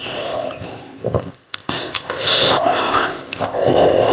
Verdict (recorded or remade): remade